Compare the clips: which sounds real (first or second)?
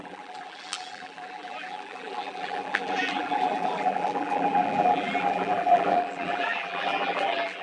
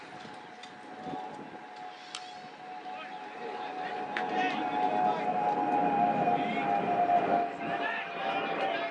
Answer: second